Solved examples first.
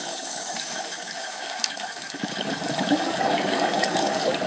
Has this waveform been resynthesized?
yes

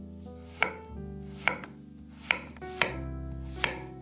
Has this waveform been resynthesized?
no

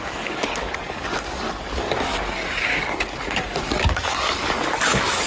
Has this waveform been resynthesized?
yes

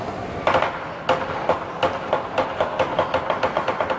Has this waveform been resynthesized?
no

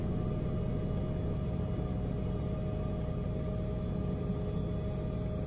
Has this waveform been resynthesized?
no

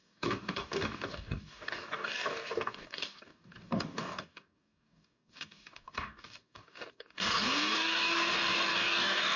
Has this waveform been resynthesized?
yes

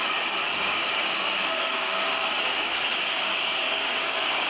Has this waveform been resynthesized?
yes